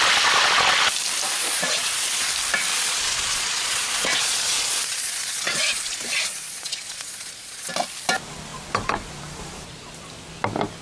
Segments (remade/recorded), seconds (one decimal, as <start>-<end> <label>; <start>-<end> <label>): 0.0-1.4 recorded; 1.4-2.3 remade; 2.3-2.7 recorded; 2.7-7.7 remade; 7.7-10.8 recorded